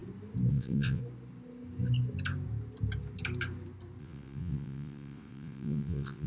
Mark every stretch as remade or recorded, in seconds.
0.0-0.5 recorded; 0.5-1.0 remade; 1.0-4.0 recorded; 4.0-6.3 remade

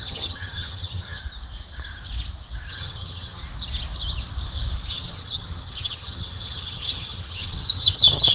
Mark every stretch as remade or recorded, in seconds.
0.0-1.2 remade; 1.2-2.7 recorded; 2.7-3.4 remade; 3.4-4.9 recorded; 4.9-8.3 remade

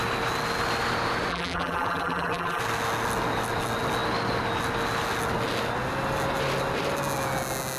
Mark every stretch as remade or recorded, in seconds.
0.0-1.3 recorded; 1.3-2.6 remade; 2.6-7.8 recorded

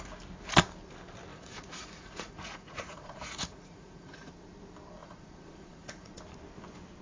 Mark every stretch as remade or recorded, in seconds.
0.0-1.3 recorded; 1.3-4.3 remade; 4.3-5.0 recorded; 5.0-6.1 remade; 6.1-7.0 recorded

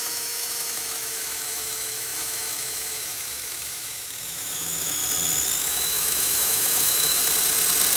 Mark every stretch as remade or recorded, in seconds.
0.0-5.0 remade; 5.0-5.6 recorded; 5.6-7.2 remade; 7.2-8.0 recorded

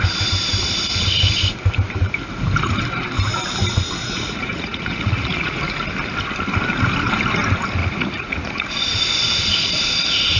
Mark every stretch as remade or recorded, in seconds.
0.0-4.0 recorded; 4.0-5.6 remade; 5.6-7.8 recorded; 7.8-8.7 remade; 8.7-10.4 recorded